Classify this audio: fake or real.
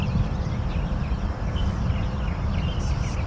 real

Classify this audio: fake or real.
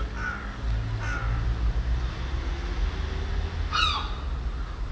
real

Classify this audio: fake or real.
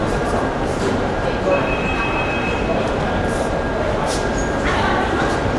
fake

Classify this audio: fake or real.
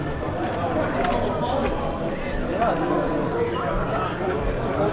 fake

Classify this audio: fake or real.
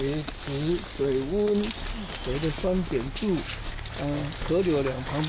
real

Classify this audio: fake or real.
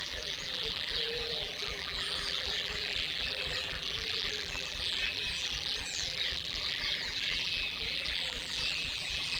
fake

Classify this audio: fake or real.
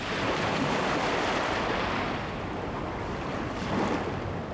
real